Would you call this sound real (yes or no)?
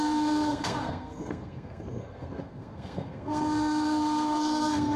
no